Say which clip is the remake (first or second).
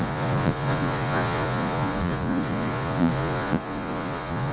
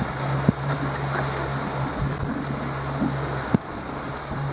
first